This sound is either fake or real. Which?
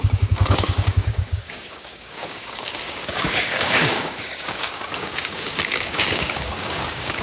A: fake